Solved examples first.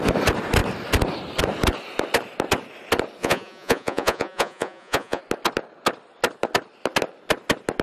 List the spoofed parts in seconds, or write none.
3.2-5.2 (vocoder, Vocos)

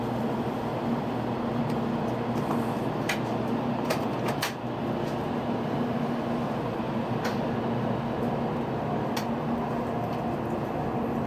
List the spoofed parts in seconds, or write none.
none

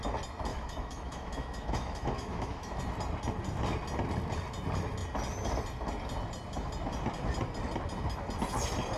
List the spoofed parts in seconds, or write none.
0.5-2.8 (autoencoder, DAC-VAE)